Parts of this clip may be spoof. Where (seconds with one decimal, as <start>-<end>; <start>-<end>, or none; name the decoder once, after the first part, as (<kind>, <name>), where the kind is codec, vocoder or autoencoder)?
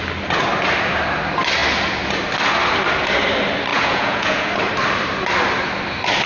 3.7-4.5 (vocoder, Vocos)